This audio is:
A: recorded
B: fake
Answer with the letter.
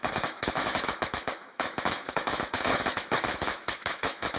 B